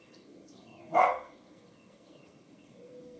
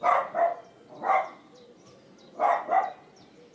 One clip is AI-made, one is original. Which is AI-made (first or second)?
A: first